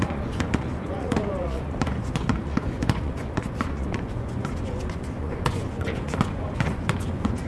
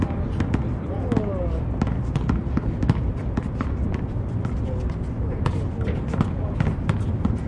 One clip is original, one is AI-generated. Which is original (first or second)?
second